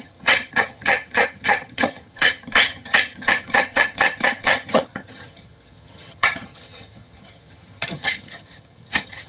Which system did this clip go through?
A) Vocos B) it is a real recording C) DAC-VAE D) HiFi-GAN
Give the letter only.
D